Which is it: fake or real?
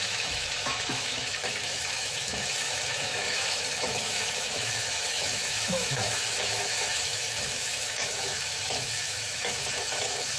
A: fake